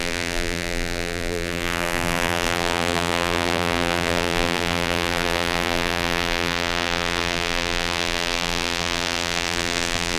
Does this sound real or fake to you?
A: fake